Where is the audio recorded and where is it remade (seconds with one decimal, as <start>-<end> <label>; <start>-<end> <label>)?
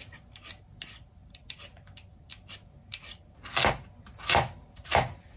0.0-5.4 recorded